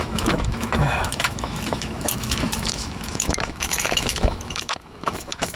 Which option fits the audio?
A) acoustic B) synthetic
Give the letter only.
B